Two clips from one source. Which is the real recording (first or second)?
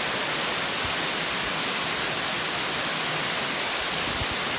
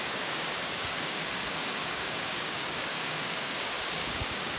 first